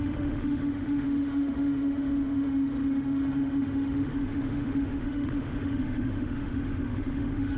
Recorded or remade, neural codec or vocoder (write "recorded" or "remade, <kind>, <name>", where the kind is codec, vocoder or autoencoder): remade, autoencoder, DAC-VAE